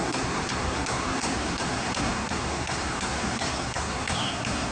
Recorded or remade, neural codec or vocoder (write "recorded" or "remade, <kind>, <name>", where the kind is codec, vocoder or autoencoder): remade, codec, SNAC